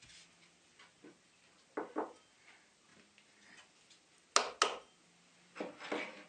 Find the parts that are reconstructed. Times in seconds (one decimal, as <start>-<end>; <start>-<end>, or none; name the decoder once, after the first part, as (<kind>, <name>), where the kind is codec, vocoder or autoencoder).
none